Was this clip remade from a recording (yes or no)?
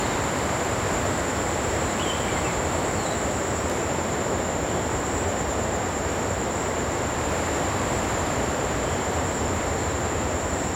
yes